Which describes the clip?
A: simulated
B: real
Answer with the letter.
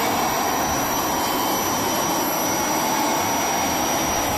B